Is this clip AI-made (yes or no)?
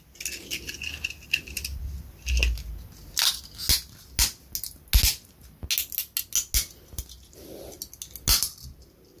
no